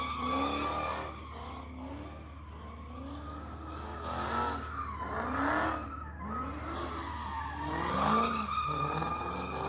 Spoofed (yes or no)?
no